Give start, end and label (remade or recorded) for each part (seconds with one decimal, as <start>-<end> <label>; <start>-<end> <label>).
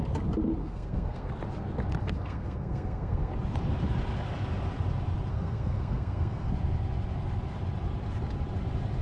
0.0-0.6 recorded; 0.6-1.3 remade; 1.3-2.0 recorded; 2.0-3.3 remade; 3.3-5.3 recorded; 5.3-6.5 remade; 6.5-9.0 recorded